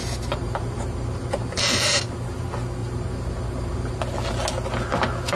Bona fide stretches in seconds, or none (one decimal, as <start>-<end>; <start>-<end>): 2.0-2.8; 4.0-5.4